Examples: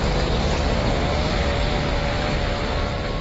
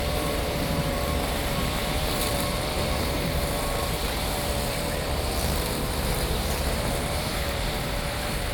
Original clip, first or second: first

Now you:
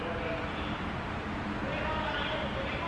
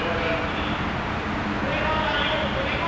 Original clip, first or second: second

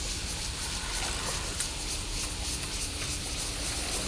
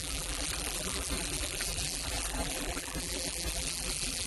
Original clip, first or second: first